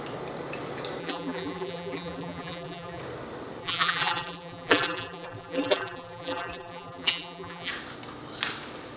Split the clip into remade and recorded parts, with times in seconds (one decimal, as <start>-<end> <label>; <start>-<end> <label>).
0.0-1.0 recorded; 1.0-3.0 remade; 3.0-3.6 recorded; 3.6-7.7 remade; 7.7-9.0 recorded

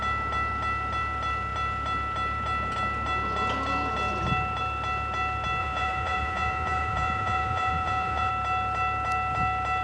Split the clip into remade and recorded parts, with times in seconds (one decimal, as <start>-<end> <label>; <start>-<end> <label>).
0.0-5.6 recorded; 5.6-8.3 remade; 8.3-9.8 recorded

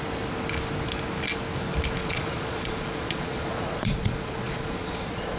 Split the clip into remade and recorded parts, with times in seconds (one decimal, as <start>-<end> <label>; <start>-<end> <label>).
0.0-2.0 recorded; 2.0-5.4 remade

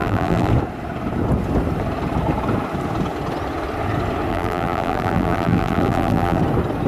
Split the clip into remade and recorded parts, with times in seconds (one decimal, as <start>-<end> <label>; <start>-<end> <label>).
0.0-0.5 remade; 0.5-4.3 recorded; 4.3-6.4 remade; 6.4-6.9 recorded

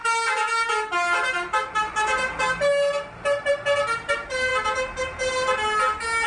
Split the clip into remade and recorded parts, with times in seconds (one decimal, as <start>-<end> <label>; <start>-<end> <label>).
0.0-6.3 recorded

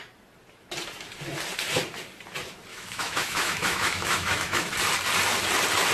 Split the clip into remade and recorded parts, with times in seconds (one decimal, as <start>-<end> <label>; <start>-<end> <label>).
0.0-2.7 recorded; 2.7-4.7 remade; 4.7-5.9 recorded

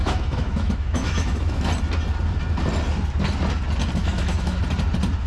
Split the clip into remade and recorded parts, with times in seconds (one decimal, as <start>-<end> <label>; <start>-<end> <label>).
0.0-1.7 remade; 1.7-4.0 recorded; 4.0-4.6 remade; 4.6-5.3 recorded

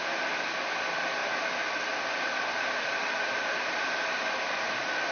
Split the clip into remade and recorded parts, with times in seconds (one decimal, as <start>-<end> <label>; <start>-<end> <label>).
0.0-1.2 remade; 1.2-3.3 recorded; 3.3-5.1 remade